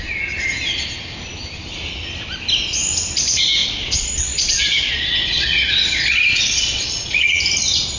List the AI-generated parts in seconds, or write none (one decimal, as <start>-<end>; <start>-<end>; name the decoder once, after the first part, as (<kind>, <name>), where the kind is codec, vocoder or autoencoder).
3.6-7.4 (vocoder, Vocos)